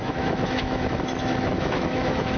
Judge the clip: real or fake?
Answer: fake